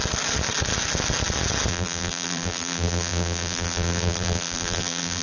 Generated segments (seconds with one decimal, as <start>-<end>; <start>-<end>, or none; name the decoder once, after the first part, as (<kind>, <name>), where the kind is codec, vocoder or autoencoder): 1.7-5.2 (vocoder, BigVGAN v2)